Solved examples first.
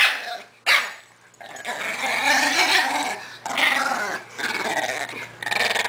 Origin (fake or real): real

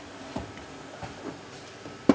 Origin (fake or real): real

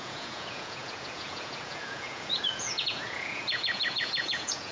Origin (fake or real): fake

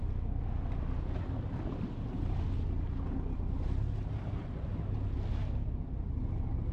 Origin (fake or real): real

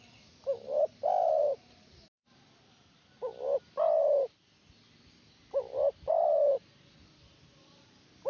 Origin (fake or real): fake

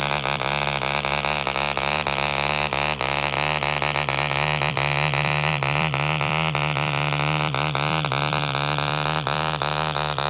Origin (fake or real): fake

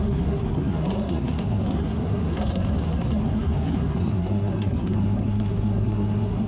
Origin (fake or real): fake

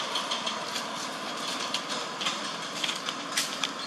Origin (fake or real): real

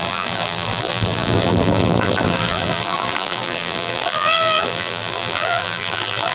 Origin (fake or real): fake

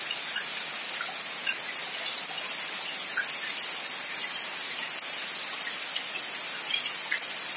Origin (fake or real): real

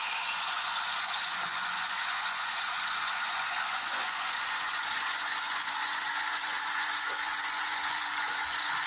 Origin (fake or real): fake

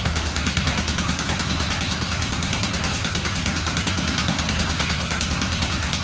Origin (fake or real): fake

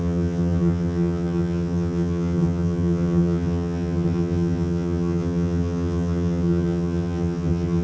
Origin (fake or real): fake